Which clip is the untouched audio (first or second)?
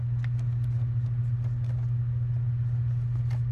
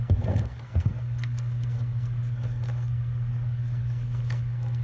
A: first